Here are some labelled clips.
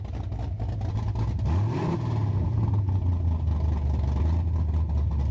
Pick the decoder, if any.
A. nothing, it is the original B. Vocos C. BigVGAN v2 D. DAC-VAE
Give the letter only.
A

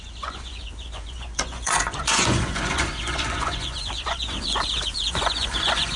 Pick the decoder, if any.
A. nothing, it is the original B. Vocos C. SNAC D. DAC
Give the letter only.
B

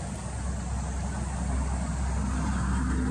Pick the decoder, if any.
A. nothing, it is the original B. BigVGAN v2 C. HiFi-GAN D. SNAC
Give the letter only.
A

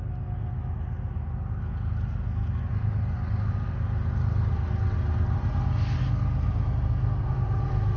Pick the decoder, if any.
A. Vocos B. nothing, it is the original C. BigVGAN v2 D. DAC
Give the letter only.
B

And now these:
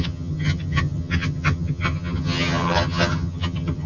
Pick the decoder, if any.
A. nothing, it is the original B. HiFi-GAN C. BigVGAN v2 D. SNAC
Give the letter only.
B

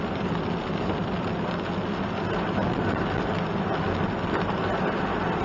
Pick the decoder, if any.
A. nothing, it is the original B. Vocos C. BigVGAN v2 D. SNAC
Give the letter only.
A